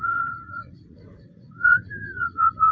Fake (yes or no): yes